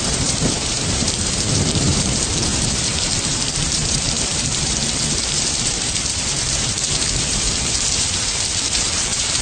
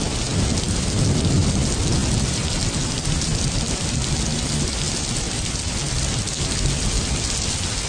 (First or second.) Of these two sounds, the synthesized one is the first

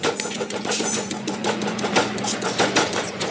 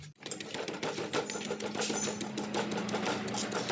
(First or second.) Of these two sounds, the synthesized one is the first